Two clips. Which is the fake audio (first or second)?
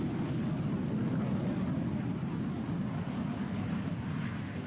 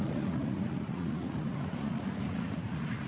second